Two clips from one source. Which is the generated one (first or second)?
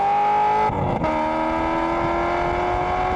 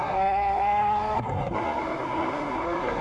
second